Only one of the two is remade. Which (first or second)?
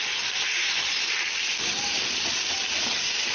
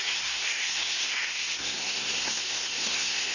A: second